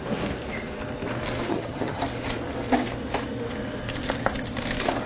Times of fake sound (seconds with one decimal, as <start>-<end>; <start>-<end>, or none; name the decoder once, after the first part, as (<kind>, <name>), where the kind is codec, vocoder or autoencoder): 1.5-2.0 (vocoder, HiFi-GAN)